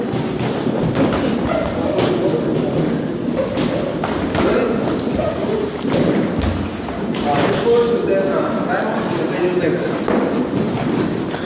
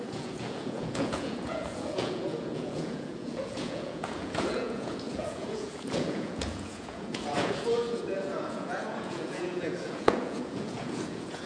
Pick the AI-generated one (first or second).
second